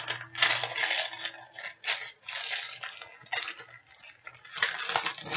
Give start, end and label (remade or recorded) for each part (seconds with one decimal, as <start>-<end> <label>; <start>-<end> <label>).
0.0-5.4 recorded